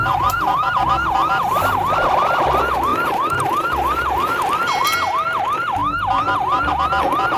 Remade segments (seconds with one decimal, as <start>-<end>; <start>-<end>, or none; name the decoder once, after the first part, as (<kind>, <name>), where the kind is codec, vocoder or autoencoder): 0.0-0.9 (vocoder, BigVGAN v2); 2.9-4.5